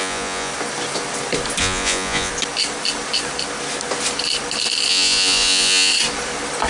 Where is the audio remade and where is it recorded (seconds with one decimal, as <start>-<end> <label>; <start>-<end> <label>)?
0.0-0.5 remade; 0.5-1.6 recorded; 1.6-2.3 remade; 2.3-4.9 recorded; 4.9-5.9 remade; 5.9-6.7 recorded